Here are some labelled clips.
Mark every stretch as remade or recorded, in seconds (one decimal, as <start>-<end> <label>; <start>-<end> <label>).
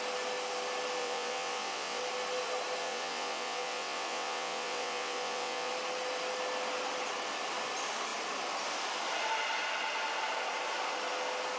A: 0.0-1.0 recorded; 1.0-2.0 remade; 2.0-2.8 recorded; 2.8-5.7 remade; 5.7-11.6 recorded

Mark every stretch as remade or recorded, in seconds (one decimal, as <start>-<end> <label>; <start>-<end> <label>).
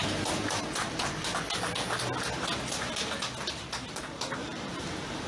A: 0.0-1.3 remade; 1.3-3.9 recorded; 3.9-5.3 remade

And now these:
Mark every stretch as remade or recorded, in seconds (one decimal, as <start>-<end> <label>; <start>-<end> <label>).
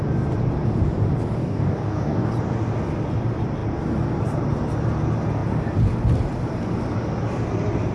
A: 0.0-1.4 recorded; 1.4-2.3 remade; 2.3-7.9 recorded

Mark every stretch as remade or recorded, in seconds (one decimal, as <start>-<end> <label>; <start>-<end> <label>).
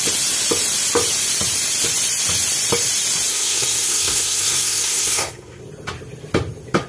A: 0.0-3.3 recorded; 3.3-5.6 remade; 5.6-6.9 recorded